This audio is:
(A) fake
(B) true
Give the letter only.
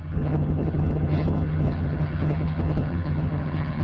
A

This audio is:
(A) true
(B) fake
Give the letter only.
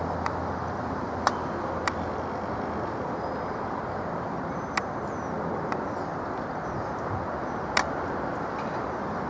A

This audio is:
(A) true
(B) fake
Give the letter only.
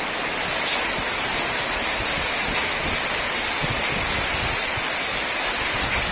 A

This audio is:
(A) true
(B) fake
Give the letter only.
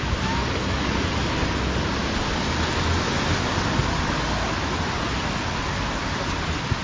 A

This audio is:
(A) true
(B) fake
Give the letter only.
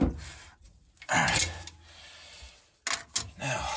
A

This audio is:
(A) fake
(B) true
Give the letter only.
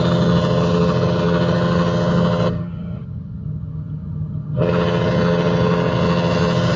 A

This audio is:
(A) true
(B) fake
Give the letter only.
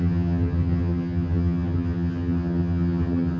B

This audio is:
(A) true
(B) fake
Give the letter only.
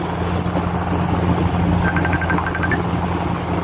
A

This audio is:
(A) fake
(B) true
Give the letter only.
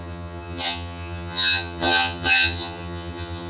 A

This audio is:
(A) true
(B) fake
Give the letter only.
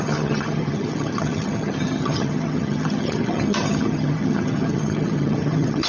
B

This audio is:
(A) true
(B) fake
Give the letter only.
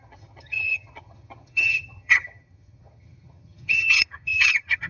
B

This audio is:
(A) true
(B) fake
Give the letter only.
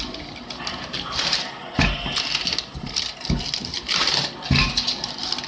A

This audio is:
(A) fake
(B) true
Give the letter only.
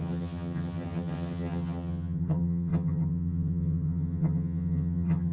A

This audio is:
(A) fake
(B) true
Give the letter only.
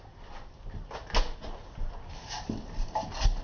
B